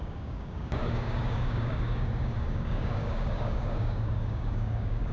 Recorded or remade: remade